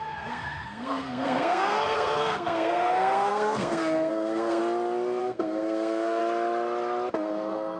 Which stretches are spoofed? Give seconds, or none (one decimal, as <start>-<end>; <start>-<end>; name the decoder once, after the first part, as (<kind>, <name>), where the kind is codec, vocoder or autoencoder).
0.0-4.6 (codec, SNAC); 5.2-6.2; 7.1-7.8